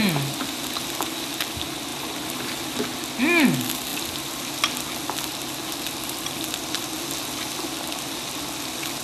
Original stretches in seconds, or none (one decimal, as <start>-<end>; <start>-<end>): 0.0-9.0